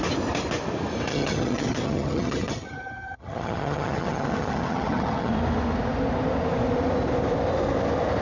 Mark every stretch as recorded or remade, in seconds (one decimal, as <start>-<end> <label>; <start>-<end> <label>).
0.0-1.1 recorded; 1.1-5.3 remade; 5.3-8.2 recorded